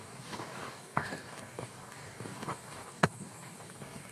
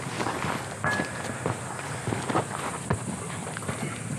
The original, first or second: second